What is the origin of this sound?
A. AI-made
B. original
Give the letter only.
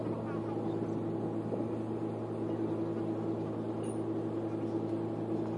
B